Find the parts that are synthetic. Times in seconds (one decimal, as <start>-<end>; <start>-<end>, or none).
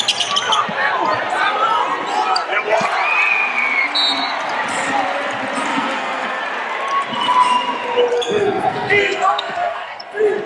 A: 5.7-6.4; 8.1-10.0